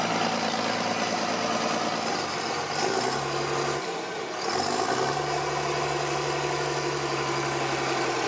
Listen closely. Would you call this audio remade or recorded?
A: recorded